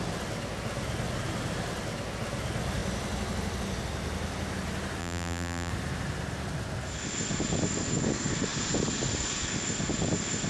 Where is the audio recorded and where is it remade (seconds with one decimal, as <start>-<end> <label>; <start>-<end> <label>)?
0.0-5.0 recorded; 5.0-5.7 remade; 5.7-10.5 recorded